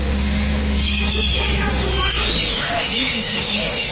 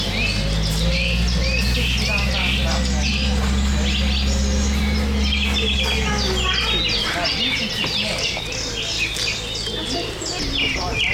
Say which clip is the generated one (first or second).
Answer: first